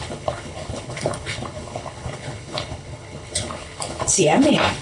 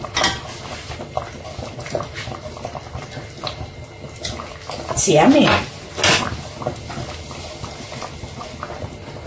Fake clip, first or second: first